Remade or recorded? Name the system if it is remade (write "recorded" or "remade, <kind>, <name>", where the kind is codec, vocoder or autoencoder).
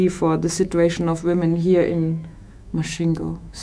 remade, autoencoder, DAC-VAE